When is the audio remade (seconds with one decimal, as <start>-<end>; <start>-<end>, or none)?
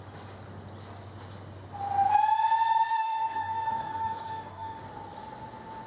2.9-4.8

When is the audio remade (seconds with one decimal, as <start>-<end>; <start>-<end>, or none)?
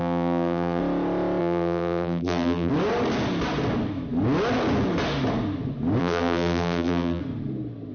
0.0-0.8; 1.4-2.7; 6.0-7.2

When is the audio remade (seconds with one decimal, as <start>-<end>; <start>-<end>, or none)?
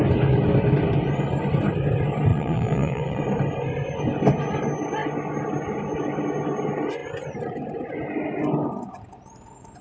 2.3-3.2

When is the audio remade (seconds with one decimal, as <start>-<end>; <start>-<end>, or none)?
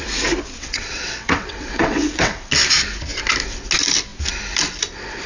0.6-2.5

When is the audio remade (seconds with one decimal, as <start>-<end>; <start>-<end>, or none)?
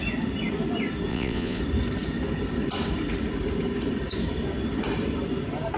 1.1-1.6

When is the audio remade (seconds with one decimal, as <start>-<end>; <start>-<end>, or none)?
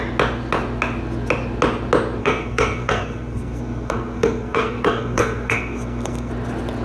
2.2-6.3